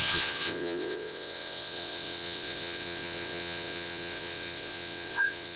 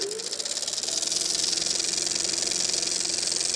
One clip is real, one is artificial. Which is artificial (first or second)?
first